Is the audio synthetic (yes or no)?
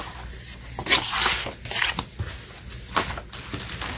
no